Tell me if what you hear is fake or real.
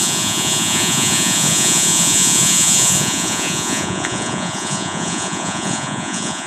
fake